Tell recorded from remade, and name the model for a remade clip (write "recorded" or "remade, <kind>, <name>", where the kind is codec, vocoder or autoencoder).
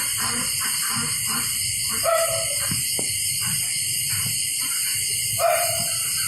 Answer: recorded